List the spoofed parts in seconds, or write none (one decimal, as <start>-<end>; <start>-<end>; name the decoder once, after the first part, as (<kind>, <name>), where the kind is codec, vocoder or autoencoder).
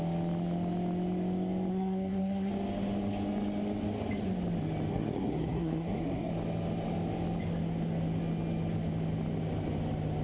1.7-2.5 (codec, SNAC); 4.9-6.3